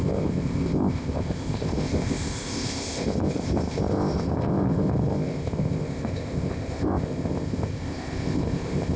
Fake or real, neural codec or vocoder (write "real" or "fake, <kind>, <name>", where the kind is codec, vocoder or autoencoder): fake, codec, ZipCodec